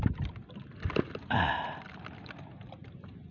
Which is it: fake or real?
real